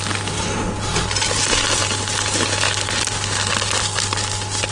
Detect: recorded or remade recorded